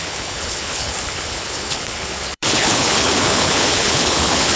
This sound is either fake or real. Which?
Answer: fake